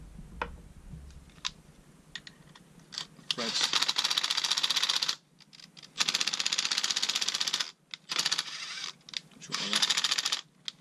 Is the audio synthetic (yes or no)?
no